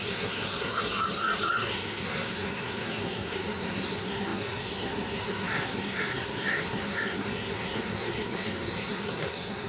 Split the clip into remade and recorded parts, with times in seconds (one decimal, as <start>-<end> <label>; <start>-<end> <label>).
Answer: 0.0-9.7 remade